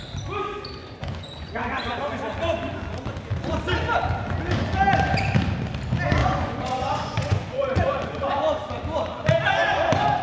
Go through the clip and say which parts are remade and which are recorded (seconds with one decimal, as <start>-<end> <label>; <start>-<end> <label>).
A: 0.0-0.8 recorded; 0.8-1.5 remade; 1.5-6.2 recorded; 6.2-8.4 remade; 8.4-10.2 recorded